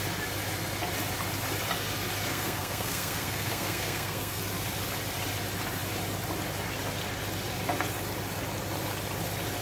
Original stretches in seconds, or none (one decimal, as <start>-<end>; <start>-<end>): 0.0-2.3; 4.4-9.6